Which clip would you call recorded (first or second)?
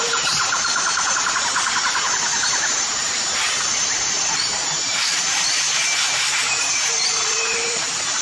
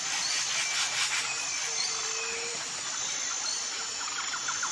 second